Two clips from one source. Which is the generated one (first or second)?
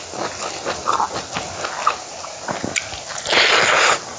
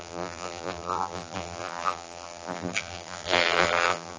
second